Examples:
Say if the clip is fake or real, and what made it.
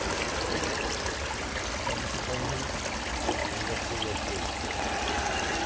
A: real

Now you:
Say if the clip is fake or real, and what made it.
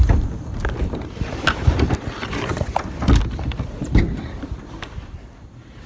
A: fake, vocoder, BigVGAN v2